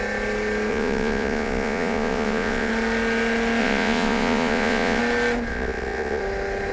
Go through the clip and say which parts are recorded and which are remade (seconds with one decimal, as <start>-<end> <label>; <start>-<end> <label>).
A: 0.0-0.7 recorded; 0.7-2.7 remade; 2.7-3.6 recorded; 3.6-5.0 remade; 5.0-5.5 recorded; 5.5-6.2 remade; 6.2-6.7 recorded